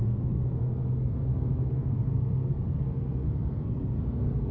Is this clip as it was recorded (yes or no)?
no